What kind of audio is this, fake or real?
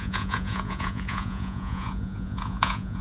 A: fake